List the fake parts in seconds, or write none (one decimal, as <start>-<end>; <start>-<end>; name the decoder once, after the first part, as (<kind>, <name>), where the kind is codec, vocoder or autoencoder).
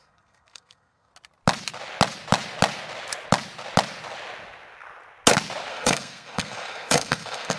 0.0-1.1 (codec, SNAC); 5.7-7.6